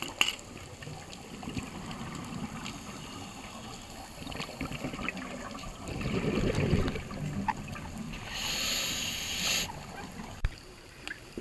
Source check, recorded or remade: recorded